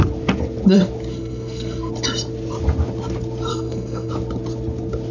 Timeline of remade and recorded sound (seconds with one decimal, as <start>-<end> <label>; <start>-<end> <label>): 0.0-1.1 recorded; 1.1-1.9 remade; 1.9-3.5 recorded; 3.5-4.1 remade; 4.1-5.1 recorded